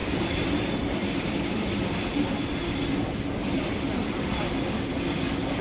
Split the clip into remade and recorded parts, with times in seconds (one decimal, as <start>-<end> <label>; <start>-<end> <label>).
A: 0.0-5.6 recorded